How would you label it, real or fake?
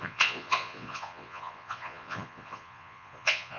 fake